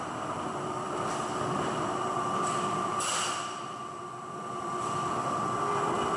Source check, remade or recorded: remade